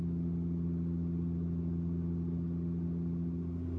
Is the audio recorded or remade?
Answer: recorded